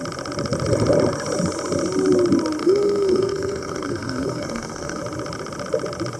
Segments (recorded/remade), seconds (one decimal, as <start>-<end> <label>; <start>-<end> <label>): 0.0-2.6 recorded; 2.6-5.0 remade; 5.0-6.2 recorded